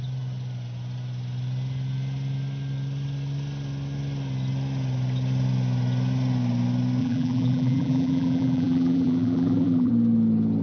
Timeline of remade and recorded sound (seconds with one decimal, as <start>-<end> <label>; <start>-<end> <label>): 0.0-7.0 recorded; 7.0-9.9 remade; 9.9-10.6 recorded

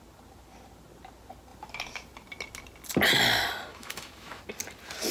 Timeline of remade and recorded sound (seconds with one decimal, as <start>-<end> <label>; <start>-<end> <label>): 0.0-3.7 recorded; 3.7-4.4 remade; 4.4-5.1 recorded

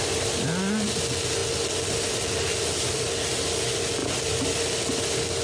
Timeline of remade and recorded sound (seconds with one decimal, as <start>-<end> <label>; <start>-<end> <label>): 0.0-5.4 recorded

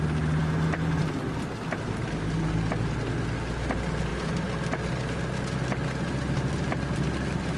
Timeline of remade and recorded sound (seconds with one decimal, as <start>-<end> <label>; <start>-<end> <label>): 0.0-7.6 recorded

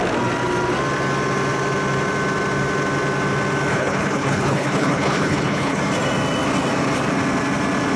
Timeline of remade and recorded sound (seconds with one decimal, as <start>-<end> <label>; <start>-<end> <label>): 0.0-3.7 recorded; 3.7-5.8 remade; 5.8-8.0 recorded

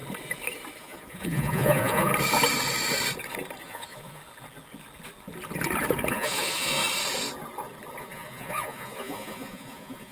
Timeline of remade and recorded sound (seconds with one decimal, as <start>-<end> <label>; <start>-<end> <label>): 0.0-0.8 recorded; 0.8-2.1 remade; 2.1-3.6 recorded; 3.6-4.2 remade; 4.2-6.1 recorded; 6.1-6.8 remade; 6.8-8.0 recorded; 8.0-10.1 remade

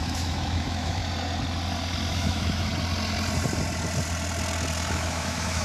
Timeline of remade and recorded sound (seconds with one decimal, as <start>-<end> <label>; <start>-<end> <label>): 0.0-1.0 remade; 1.0-2.1 recorded; 2.1-2.7 remade; 2.7-4.9 recorded; 4.9-5.6 remade

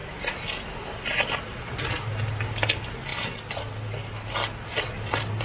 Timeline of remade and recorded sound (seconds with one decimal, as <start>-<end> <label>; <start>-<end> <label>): 0.0-5.4 recorded